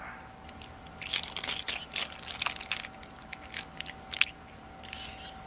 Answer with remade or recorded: recorded